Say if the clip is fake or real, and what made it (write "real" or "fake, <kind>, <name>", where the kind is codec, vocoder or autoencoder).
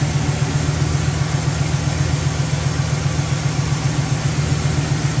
real